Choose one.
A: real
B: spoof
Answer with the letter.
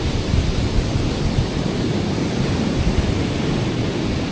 A